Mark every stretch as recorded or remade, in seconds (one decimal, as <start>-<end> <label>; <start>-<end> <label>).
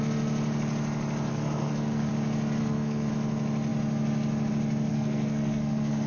0.0-1.3 recorded; 1.3-2.1 remade; 2.1-2.6 recorded; 2.6-3.1 remade; 3.1-4.9 recorded; 4.9-6.1 remade